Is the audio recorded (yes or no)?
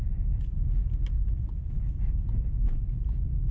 no